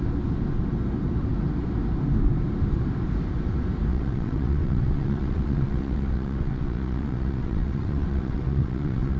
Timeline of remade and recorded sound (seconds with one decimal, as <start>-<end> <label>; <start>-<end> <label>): 0.0-3.9 recorded; 3.9-9.2 remade